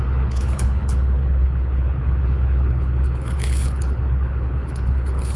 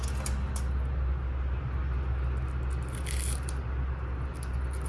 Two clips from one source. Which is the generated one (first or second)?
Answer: first